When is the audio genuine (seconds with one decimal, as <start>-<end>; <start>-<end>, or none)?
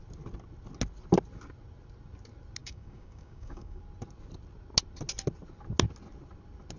0.0-2.6; 3.8-6.8